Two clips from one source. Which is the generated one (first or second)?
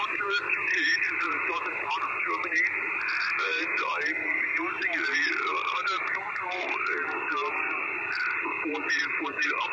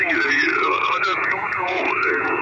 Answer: second